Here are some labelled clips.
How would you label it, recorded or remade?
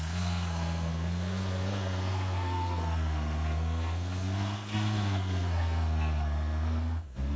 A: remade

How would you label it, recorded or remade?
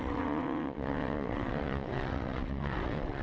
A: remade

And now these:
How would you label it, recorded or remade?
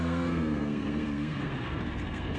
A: remade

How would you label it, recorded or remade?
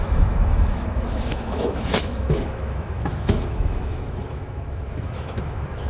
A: remade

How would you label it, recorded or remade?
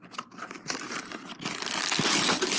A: recorded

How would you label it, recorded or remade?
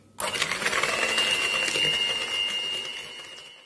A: recorded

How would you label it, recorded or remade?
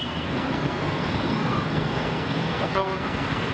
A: remade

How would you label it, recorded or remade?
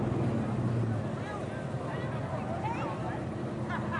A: recorded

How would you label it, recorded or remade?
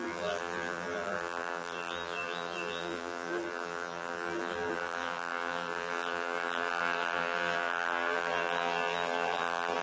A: remade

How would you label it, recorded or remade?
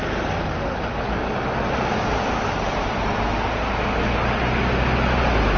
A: recorded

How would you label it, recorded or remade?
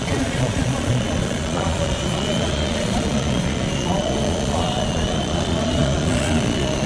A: remade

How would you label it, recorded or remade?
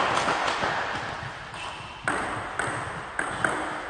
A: recorded